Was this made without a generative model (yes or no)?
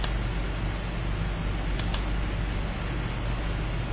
yes